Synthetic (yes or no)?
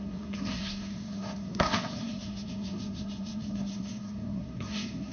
yes